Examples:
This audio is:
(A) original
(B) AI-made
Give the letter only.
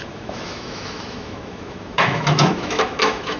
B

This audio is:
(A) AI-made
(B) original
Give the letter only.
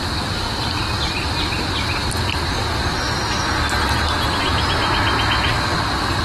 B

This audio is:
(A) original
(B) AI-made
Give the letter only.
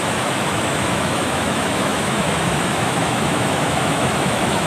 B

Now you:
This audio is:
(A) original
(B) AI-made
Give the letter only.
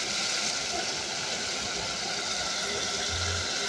A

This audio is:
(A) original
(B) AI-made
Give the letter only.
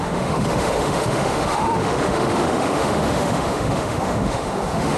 B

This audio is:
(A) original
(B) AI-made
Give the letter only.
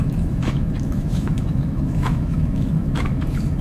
B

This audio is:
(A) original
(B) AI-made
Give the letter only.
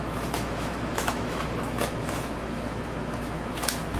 B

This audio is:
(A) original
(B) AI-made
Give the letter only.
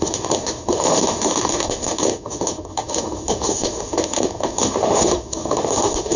B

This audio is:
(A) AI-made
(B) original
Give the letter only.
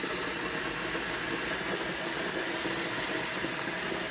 B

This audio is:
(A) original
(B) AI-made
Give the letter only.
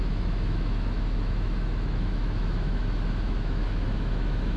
B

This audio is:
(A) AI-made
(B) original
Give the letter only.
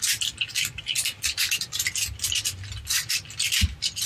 B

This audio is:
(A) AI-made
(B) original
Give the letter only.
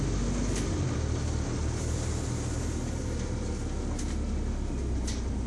B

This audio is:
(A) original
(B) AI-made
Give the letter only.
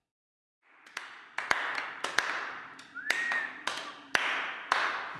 A